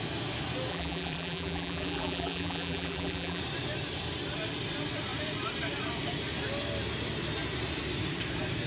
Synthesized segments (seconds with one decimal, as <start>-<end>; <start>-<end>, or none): 0.7-3.4